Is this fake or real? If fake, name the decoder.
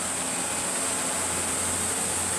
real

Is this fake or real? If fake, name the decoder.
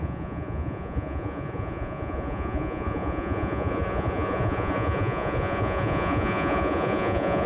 fake, vocoder, Vocos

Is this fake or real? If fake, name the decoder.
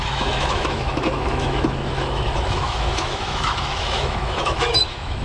fake, autoencoder, DAC-VAE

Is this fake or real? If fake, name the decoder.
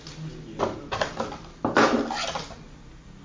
real